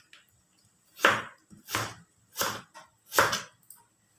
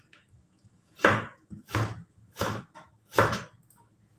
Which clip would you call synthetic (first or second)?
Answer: second